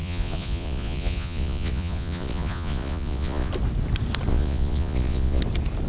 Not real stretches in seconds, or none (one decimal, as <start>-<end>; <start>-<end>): 0.0-3.5; 4.3-5.4